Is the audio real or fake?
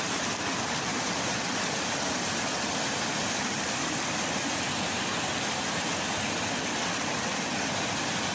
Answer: fake